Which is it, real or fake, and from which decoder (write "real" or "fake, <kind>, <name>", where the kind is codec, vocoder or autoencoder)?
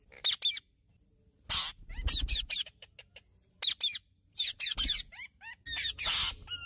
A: real